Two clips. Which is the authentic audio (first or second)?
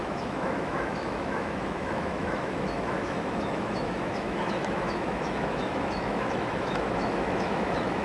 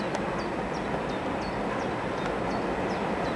second